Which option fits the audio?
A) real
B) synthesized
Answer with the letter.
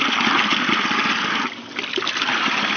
A